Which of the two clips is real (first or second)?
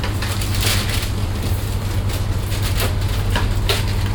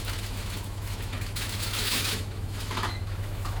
first